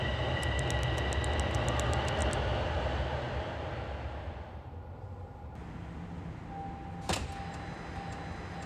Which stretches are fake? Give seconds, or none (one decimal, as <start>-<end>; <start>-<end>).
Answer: none